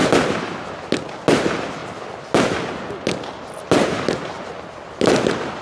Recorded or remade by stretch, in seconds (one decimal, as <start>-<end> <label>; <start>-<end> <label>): 0.0-5.6 recorded